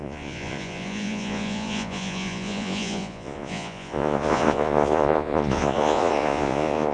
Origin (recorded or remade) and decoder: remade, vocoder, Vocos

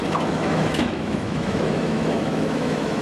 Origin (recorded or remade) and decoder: remade, autoencoder, DAC-VAE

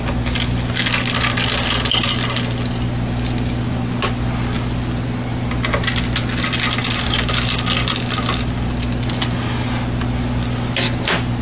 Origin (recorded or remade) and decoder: recorded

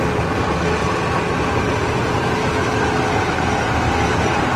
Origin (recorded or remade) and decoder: recorded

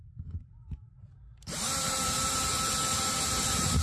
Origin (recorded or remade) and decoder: remade, vocoder, BigVGAN v2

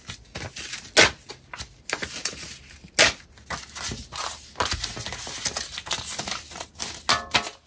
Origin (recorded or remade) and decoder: recorded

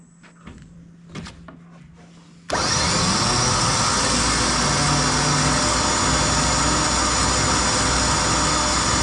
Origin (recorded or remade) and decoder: recorded